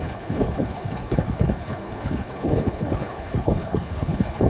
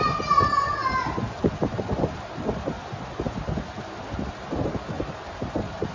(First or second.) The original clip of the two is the second